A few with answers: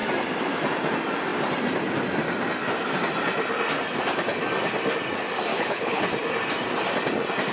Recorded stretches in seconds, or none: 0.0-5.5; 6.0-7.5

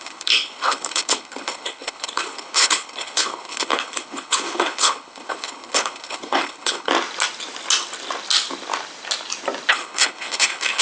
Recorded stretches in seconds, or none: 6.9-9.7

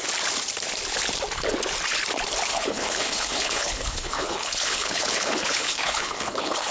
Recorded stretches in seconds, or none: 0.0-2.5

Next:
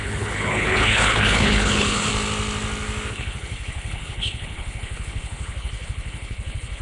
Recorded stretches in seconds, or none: 2.1-3.1

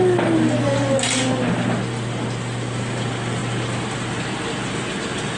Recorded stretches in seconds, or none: 0.0-5.4

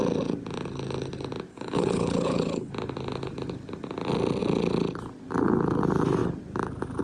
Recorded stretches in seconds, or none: 0.0-1.5; 2.7-7.0

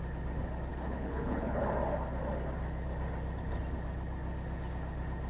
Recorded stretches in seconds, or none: 0.0-0.7; 1.6-5.3

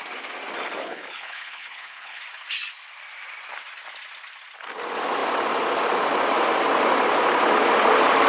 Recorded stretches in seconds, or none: 0.0-0.8; 2.2-8.3